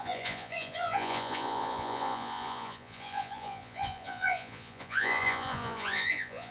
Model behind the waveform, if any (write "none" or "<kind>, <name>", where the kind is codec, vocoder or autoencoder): vocoder, Vocos